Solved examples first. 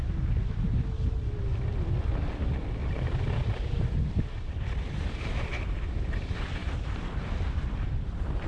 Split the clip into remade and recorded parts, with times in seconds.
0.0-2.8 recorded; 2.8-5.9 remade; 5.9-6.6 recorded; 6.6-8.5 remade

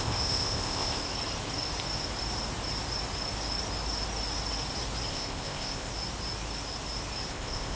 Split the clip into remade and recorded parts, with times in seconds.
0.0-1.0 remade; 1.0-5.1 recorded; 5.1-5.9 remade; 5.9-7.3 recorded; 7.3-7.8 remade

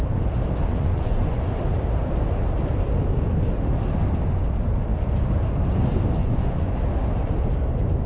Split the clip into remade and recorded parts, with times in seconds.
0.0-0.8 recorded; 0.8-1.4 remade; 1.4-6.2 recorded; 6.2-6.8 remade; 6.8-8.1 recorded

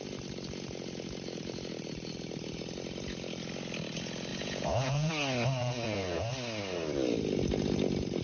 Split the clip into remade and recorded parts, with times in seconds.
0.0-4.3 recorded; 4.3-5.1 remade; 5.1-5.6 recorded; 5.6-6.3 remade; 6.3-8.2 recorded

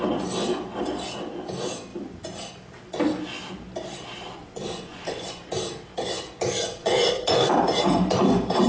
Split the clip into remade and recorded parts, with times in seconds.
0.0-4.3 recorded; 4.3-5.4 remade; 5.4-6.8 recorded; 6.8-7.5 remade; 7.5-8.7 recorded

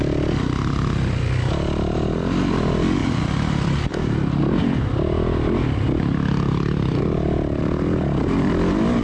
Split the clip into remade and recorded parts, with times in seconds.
0.0-9.0 recorded